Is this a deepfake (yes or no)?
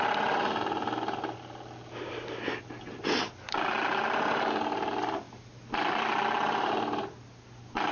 no